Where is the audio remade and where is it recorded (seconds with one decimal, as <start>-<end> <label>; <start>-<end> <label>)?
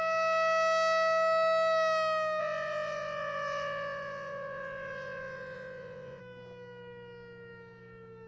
0.0-2.4 recorded; 2.4-6.2 remade; 6.2-8.3 recorded